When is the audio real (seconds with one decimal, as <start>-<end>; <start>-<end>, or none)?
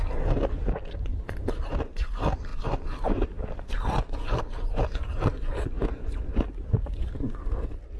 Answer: 0.0-2.5; 4.9-8.0